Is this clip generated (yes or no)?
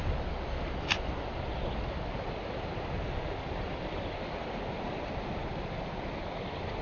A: no